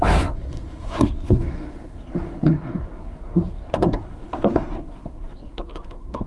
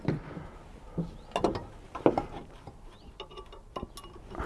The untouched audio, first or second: second